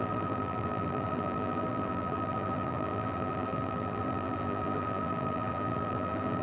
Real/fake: fake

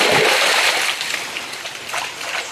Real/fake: fake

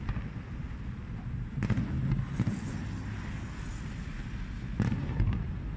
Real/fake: real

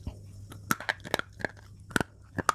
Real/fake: real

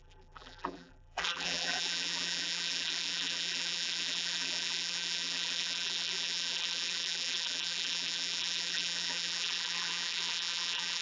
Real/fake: fake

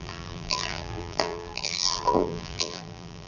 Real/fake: fake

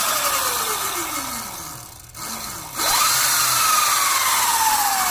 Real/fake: real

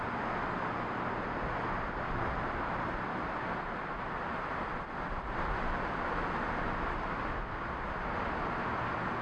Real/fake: real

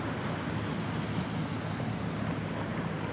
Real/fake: real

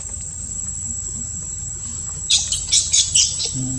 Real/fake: fake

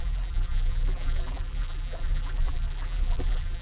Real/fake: fake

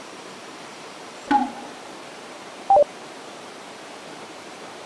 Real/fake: fake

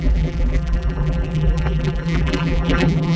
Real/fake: fake